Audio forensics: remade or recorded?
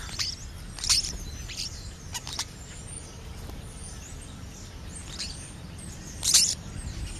recorded